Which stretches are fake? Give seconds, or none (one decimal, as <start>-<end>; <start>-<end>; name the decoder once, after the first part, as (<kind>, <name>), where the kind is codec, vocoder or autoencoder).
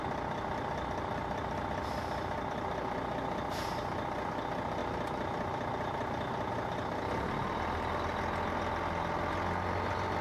4.8-6.5 (vocoder, BigVGAN v2)